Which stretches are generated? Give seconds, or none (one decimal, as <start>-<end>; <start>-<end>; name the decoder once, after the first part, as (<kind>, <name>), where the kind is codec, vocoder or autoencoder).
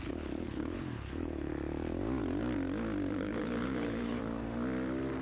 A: 0.0-1.5 (codec, HILCodec); 3.1-4.2